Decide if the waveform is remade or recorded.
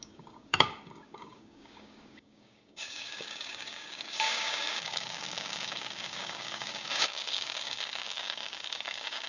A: remade